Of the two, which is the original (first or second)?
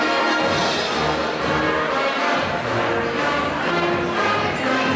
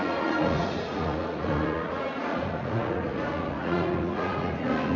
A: first